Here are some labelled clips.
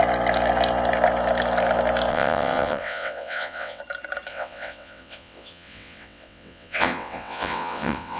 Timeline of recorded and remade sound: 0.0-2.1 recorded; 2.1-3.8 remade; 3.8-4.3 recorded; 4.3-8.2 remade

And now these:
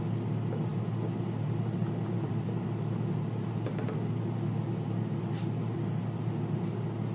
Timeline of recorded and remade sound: 0.0-7.1 recorded

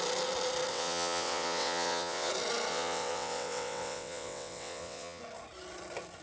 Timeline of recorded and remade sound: 0.0-0.7 recorded; 0.7-2.3 remade; 2.3-2.7 recorded; 2.7-5.2 remade; 5.2-6.2 recorded

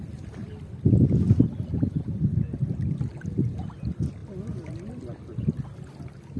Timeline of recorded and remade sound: 0.0-6.4 recorded